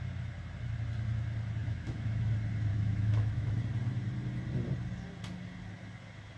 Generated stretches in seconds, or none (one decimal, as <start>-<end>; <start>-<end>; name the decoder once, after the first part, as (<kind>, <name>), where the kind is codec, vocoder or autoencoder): 1.6-2.3 (autoencoder, DAC-VAE); 2.7-3.6